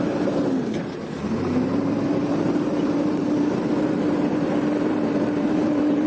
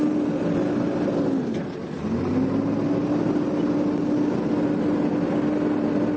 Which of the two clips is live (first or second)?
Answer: second